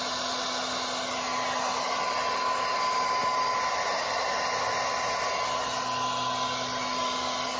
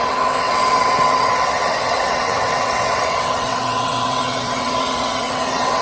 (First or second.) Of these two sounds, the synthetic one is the second